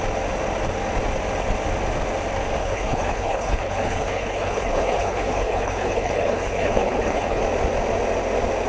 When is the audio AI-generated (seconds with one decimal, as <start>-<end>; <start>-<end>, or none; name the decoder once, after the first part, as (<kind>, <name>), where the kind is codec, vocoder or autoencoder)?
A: 2.6-7.4 (codec, HILCodec)